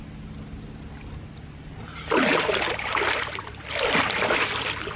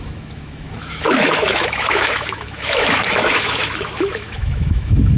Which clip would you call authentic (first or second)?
first